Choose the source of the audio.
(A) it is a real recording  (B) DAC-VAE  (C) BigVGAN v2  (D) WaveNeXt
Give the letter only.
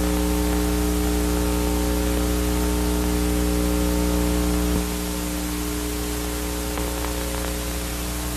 A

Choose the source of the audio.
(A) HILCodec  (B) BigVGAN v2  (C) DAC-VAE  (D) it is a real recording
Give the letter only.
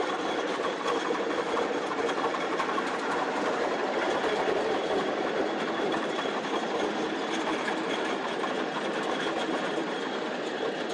B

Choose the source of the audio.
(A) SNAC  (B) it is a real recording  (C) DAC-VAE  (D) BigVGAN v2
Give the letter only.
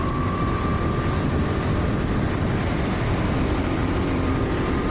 D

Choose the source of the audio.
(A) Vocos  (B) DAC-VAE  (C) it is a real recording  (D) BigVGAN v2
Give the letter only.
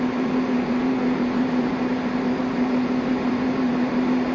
D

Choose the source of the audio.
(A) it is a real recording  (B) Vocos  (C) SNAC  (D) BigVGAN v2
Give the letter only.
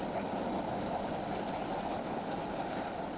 A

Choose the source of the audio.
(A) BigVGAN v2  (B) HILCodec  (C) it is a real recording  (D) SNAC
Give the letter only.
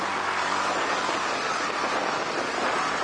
A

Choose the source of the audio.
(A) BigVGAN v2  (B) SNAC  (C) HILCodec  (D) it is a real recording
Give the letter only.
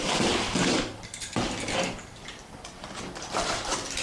A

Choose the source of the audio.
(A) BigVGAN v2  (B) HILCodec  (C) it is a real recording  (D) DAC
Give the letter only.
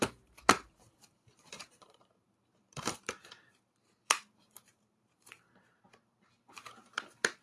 A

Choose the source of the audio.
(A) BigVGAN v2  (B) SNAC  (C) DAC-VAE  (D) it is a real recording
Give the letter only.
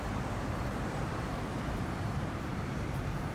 A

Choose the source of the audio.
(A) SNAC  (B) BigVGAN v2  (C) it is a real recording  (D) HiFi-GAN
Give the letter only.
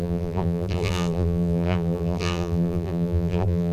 B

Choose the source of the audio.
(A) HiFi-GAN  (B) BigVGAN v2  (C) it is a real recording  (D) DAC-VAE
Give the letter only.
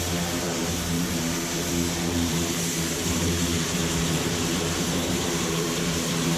B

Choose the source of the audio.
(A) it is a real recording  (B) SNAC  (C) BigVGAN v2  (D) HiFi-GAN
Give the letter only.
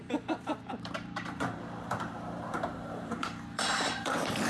C